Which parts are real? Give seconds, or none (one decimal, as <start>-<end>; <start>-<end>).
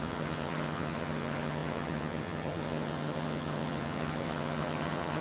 none